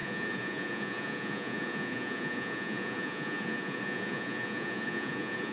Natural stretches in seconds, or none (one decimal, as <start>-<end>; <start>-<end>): none